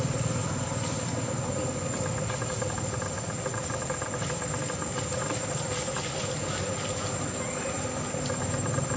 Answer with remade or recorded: recorded